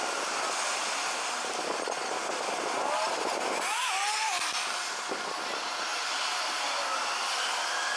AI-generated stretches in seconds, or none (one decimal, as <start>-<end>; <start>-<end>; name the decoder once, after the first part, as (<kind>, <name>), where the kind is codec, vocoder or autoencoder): 5.9-6.7 (vocoder, BigVGAN v2)